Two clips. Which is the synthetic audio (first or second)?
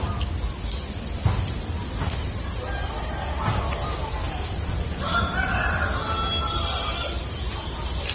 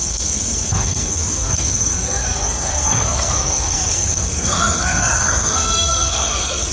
second